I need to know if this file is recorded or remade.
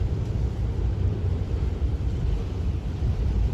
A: remade